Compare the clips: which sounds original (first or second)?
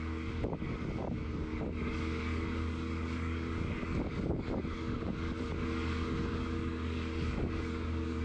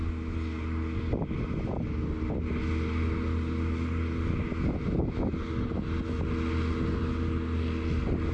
second